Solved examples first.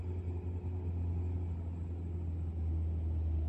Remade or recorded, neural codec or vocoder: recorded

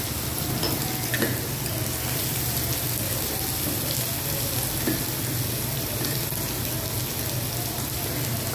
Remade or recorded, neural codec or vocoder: recorded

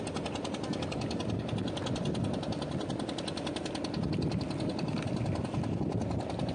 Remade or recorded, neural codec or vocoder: recorded